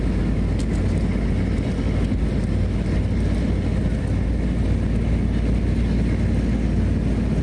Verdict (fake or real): real